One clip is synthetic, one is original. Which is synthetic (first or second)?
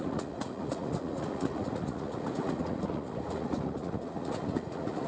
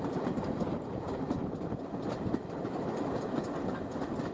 first